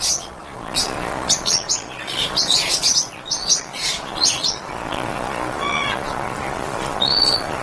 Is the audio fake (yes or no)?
yes